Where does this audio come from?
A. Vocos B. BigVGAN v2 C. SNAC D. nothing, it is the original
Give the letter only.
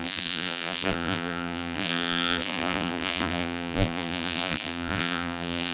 B